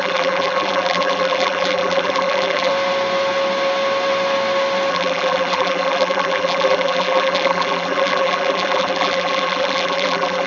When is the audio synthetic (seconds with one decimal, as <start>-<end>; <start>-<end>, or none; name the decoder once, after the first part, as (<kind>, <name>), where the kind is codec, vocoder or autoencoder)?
0.0-2.7 (vocoder, BigVGAN v2); 4.9-10.5